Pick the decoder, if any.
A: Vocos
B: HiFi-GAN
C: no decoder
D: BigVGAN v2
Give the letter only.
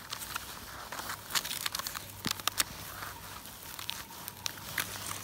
C